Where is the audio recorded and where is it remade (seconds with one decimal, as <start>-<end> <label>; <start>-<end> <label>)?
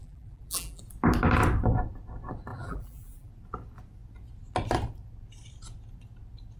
0.0-0.8 remade; 0.8-2.5 recorded; 2.5-3.3 remade; 3.3-6.6 recorded